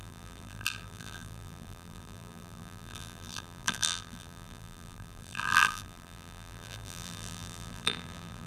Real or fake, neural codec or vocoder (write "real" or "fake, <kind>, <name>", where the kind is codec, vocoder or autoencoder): fake, vocoder, BigVGAN v2